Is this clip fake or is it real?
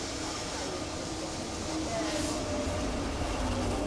real